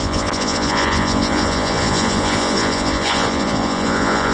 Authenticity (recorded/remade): remade